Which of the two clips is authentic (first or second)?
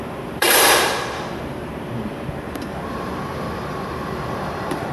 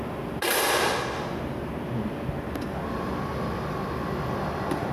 second